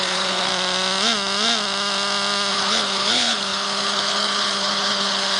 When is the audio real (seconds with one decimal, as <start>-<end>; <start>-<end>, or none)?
0.5-2.5